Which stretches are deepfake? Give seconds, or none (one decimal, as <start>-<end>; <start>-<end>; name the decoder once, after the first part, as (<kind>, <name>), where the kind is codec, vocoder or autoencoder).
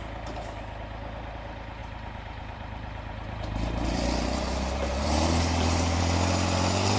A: 1.8-6.0 (vocoder, BigVGAN v2)